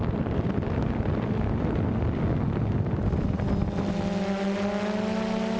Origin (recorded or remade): recorded